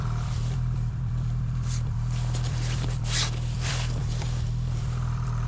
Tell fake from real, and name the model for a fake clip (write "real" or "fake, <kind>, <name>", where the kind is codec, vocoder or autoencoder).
fake, vocoder, BigVGAN v2